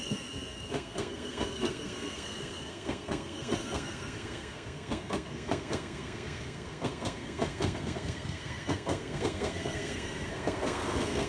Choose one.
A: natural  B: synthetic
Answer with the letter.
B